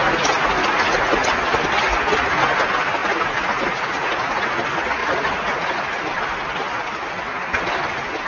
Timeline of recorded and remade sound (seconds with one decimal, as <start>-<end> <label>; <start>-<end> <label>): 0.0-1.3 remade; 1.3-3.0 recorded; 3.0-4.5 remade; 4.5-5.0 recorded; 5.0-6.0 remade; 6.0-8.3 recorded